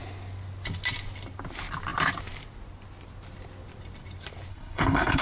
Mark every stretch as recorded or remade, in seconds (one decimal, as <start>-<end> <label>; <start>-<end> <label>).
0.0-4.5 recorded; 4.5-5.2 remade